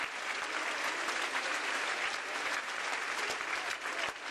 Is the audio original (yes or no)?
no